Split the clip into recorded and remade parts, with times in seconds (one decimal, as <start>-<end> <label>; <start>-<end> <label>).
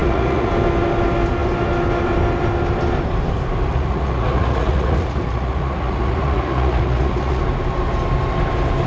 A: 0.0-0.5 remade; 0.5-3.7 recorded; 3.7-7.4 remade; 7.4-8.9 recorded